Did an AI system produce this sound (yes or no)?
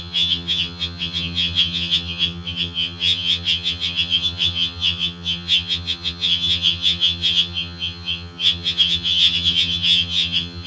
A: yes